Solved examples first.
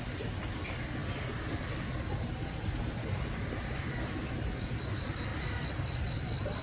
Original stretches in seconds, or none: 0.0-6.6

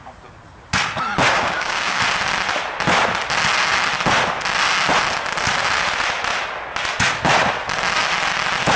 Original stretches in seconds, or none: 0.0-1.3; 2.0-8.8

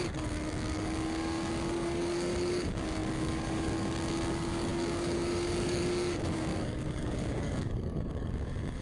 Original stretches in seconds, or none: none

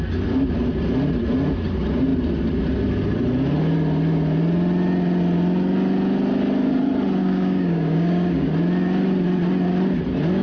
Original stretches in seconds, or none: 0.0-7.2; 8.5-10.4